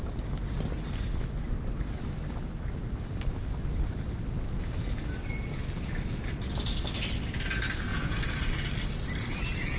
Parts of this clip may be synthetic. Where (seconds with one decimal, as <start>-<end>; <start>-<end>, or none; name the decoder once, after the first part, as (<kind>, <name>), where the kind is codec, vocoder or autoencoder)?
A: 7.9-8.5 (vocoder, Vocos)